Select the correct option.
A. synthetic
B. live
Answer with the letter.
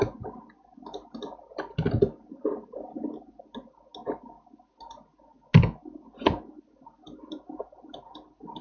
B